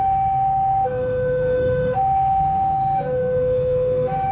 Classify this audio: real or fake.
fake